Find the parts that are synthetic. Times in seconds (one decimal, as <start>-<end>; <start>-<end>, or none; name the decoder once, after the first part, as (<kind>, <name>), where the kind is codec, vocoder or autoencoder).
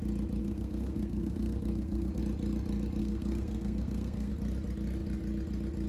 0.4-2.2 (codec, SNAC); 3.0-4.3